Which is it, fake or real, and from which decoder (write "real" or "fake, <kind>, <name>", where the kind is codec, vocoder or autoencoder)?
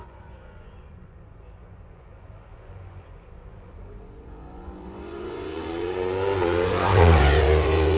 fake, vocoder, Vocos